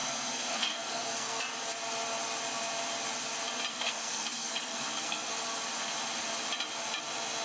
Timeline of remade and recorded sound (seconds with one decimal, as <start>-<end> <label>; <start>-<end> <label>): 0.0-1.4 remade; 1.4-3.7 recorded; 3.7-5.3 remade; 5.3-7.4 recorded